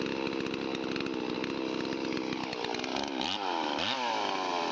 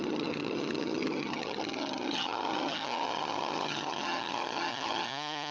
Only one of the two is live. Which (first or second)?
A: first